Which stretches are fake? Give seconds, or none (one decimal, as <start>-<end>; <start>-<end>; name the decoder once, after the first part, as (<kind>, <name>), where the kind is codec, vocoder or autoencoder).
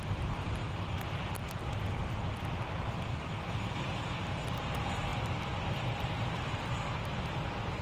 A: none